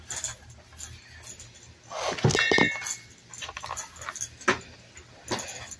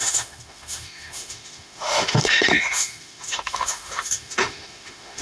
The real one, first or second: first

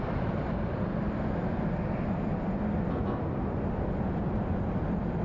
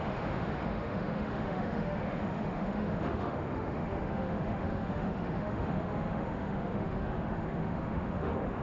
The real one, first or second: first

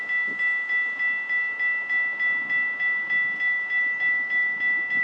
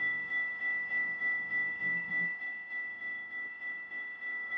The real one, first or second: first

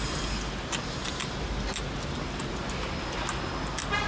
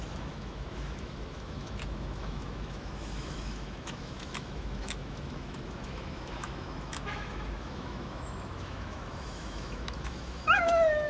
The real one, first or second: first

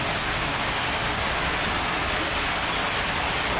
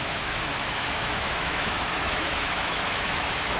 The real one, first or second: first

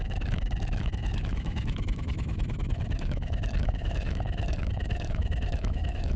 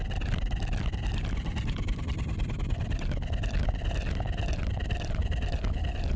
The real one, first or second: second